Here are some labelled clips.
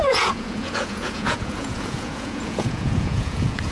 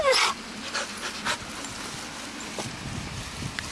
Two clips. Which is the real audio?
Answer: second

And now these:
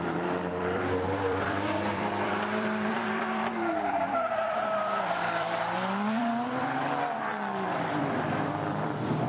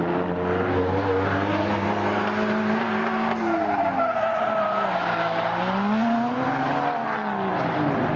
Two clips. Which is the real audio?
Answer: second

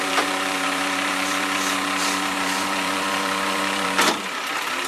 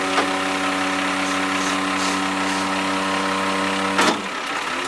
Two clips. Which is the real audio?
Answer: second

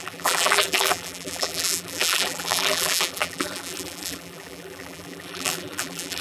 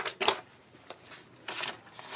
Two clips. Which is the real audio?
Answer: second